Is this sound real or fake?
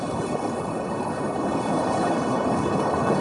fake